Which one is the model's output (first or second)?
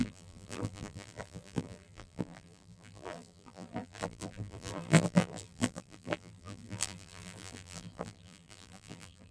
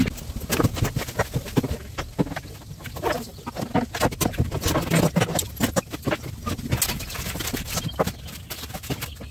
first